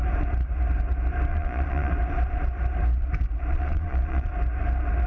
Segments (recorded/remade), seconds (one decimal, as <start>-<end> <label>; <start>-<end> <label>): 0.0-1.3 recorded; 1.3-1.9 remade; 1.9-3.5 recorded; 3.5-4.3 remade; 4.3-5.1 recorded